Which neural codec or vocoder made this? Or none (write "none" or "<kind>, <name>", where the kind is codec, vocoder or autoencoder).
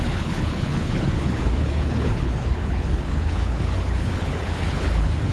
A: codec, HILCodec